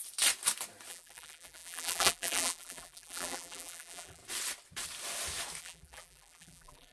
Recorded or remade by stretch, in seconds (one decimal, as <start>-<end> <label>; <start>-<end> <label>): 0.0-0.9 recorded; 0.9-4.2 remade; 4.2-5.6 recorded; 5.6-6.9 remade